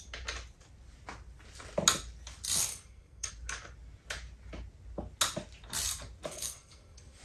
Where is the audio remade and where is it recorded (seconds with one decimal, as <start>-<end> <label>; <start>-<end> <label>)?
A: 0.0-2.7 recorded; 2.7-3.3 remade; 3.3-6.3 recorded; 6.3-7.2 remade